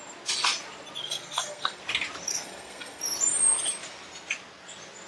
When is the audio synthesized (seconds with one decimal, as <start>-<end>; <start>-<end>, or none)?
1.0-1.8; 2.3-3.0